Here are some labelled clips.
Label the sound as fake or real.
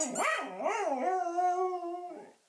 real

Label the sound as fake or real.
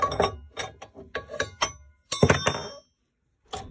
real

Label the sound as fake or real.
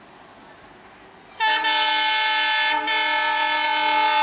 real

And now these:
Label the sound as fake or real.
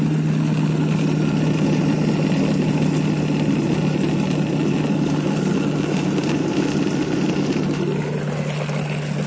real